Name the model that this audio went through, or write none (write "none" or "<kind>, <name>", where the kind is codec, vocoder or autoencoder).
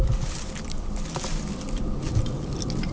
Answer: none